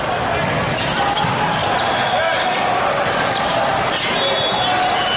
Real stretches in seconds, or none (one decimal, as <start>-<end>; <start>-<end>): 0.0-1.6; 3.7-5.2